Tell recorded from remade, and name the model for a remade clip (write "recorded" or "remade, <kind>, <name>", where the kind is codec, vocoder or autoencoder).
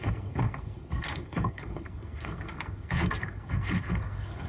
remade, codec, SNAC